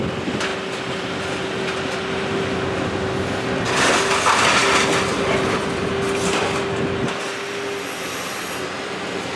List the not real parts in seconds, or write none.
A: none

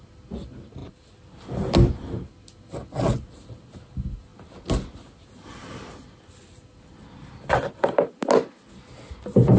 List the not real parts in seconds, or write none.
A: none

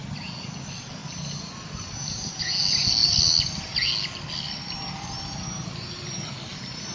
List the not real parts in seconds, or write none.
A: none

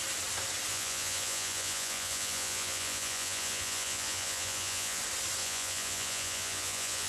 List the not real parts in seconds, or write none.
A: 0.7-5.0 (vocoder, Vocos); 5.4-7.1